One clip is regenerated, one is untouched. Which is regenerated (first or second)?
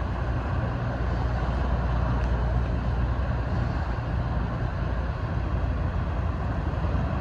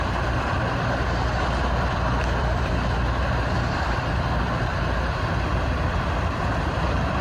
second